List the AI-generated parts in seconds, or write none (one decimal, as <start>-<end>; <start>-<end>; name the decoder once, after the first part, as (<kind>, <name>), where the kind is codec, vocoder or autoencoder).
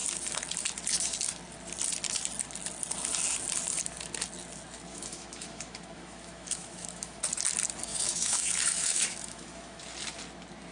4.9-7.2 (autoencoder, DAC-VAE); 7.9-9.8